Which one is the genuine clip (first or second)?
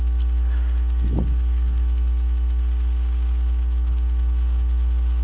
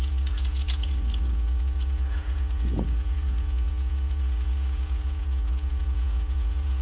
first